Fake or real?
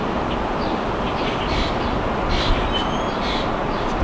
real